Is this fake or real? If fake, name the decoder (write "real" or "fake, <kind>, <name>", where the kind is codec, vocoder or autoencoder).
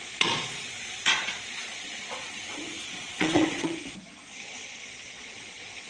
fake, vocoder, Vocos